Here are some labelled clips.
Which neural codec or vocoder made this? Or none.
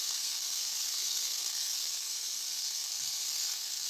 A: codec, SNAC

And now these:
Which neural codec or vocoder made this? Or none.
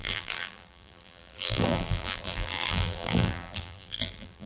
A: vocoder, BigVGAN v2